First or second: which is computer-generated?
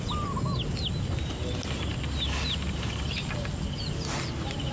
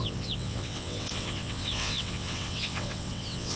second